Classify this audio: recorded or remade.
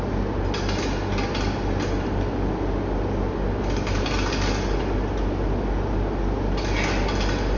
recorded